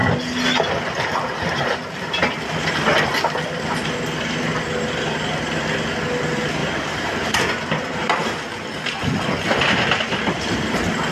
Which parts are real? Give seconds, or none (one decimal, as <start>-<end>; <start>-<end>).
0.0-6.6; 7.4-11.1